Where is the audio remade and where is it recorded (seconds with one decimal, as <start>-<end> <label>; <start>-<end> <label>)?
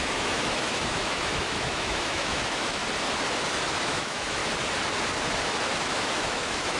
0.0-2.8 remade; 2.8-3.8 recorded; 3.8-4.4 remade; 4.4-5.8 recorded; 5.8-6.8 remade